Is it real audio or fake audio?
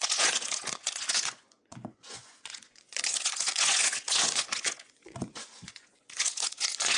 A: fake